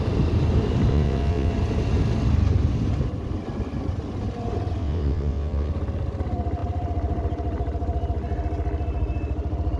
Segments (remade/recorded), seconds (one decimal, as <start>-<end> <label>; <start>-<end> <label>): 0.0-0.9 recorded; 0.9-1.5 remade; 1.5-4.8 recorded; 4.8-5.7 remade; 5.7-9.8 recorded

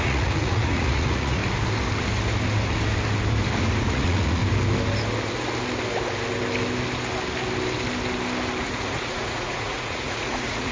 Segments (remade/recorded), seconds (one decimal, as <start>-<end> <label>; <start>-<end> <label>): 0.0-1.4 remade; 1.4-3.9 recorded; 3.9-4.4 remade; 4.4-8.6 recorded; 8.6-10.7 remade

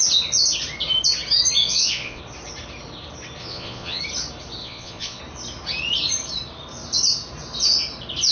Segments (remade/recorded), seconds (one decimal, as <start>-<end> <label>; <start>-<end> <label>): 0.0-1.6 recorded; 1.6-2.2 remade; 2.2-3.4 recorded; 3.4-4.0 remade; 4.0-4.6 recorded; 4.6-5.2 remade; 5.2-8.3 recorded

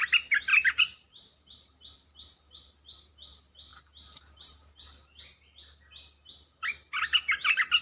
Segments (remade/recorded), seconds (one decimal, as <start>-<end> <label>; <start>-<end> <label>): 0.0-0.5 recorded; 0.5-3.1 remade; 3.1-7.8 recorded

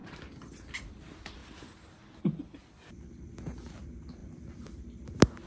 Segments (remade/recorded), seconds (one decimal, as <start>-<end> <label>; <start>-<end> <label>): 0.0-0.8 remade; 0.8-2.6 recorded; 2.6-3.3 remade; 3.3-4.2 recorded; 4.2-4.7 remade; 4.7-5.5 recorded

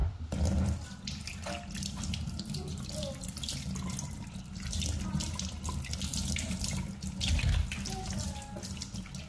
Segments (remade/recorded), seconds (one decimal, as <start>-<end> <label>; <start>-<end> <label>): 0.0-9.3 recorded

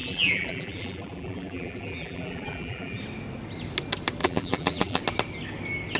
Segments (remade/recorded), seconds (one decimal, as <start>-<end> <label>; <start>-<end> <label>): 0.0-3.0 remade; 3.0-4.2 recorded; 4.2-5.0 remade; 5.0-6.0 recorded